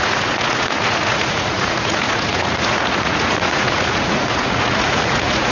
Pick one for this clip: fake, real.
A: fake